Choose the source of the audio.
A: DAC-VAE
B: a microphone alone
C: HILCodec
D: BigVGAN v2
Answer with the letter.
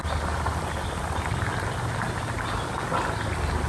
B